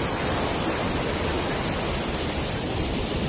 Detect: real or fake fake